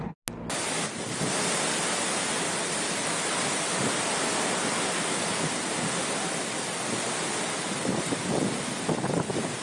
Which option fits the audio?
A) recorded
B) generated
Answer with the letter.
A